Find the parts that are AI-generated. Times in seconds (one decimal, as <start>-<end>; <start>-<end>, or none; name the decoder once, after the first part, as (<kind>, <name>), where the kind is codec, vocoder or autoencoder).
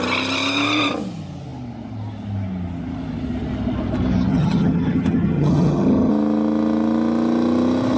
4.3-6.1 (vocoder, HiFi-GAN)